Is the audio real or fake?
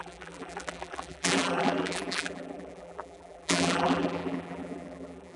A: fake